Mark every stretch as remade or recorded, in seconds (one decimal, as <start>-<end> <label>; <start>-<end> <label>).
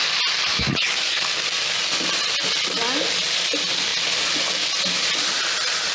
0.0-0.5 recorded; 0.5-1.2 remade; 1.2-5.9 recorded